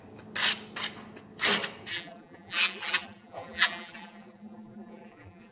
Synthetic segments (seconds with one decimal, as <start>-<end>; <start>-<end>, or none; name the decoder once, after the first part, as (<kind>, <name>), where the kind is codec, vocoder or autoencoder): 1.9-5.5 (vocoder, BigVGAN v2)